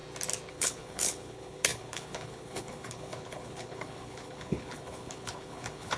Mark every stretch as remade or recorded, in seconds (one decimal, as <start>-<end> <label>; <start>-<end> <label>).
0.0-0.5 recorded; 0.5-6.0 remade